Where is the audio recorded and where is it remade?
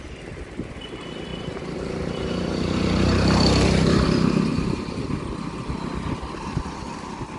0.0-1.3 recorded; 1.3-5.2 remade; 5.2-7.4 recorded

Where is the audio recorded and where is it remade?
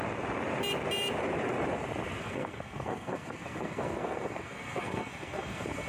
0.0-2.2 recorded; 2.2-5.9 remade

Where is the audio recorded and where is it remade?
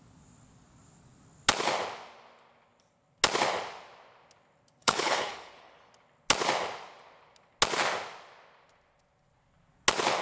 0.0-4.8 recorded; 4.8-5.9 remade; 5.9-10.2 recorded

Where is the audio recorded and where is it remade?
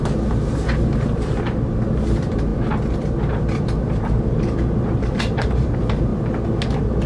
0.0-2.5 remade; 2.5-3.3 recorded; 3.3-6.1 remade; 6.1-7.1 recorded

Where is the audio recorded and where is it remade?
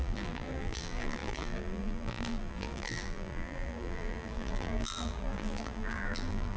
0.0-6.6 remade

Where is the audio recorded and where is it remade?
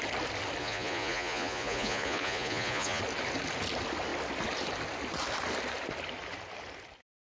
0.0-0.6 recorded; 0.6-3.0 remade; 3.0-7.2 recorded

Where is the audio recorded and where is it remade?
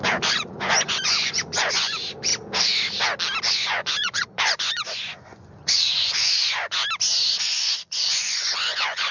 0.0-2.3 remade; 2.3-3.5 recorded; 3.5-6.8 remade; 6.8-7.4 recorded; 7.4-9.1 remade